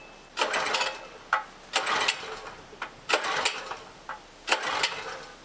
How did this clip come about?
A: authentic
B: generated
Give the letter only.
A